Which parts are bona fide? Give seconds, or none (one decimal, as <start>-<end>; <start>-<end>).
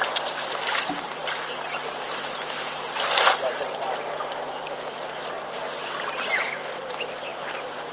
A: 0.0-1.2; 5.6-7.3